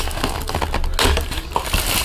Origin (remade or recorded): recorded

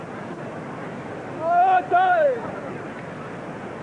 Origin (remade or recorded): recorded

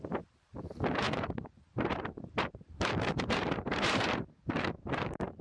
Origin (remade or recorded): remade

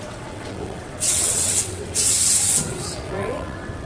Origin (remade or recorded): remade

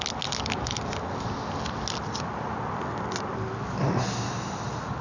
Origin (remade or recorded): recorded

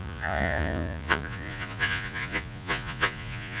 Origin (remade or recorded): remade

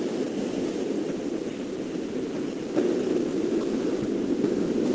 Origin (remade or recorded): recorded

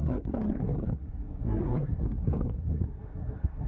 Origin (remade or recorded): remade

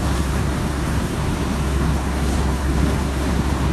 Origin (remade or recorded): remade